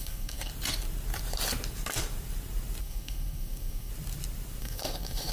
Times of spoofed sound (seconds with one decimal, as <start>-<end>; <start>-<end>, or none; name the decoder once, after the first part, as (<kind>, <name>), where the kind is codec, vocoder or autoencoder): 0.0-0.5 (codec, SNAC); 2.8-3.9; 4.6-5.3